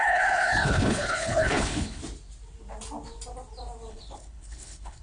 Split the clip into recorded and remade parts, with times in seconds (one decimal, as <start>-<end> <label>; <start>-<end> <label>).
0.0-2.0 remade; 2.0-3.9 recorded; 3.9-5.0 remade